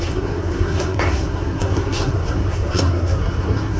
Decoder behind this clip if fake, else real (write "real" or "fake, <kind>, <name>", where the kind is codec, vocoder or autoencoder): fake, codec, SNAC